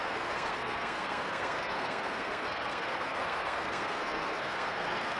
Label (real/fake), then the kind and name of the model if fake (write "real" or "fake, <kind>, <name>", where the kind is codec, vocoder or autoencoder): fake, codec, SNAC